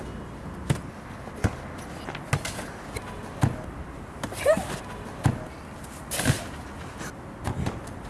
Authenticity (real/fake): real